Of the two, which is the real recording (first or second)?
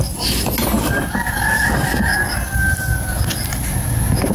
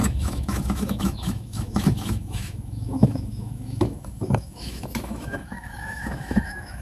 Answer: first